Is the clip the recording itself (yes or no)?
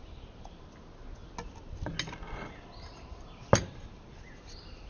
yes